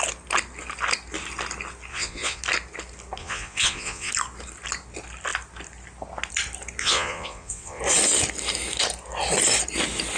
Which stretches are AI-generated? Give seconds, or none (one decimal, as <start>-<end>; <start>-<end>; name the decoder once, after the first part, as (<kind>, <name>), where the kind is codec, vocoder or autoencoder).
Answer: 1.9-2.4 (vocoder, Vocos); 3.2-4.1; 6.8-7.8